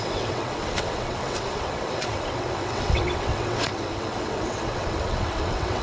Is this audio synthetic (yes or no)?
yes